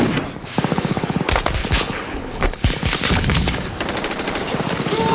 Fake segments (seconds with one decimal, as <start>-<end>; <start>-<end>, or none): 0.7-1.2; 1.6-3.7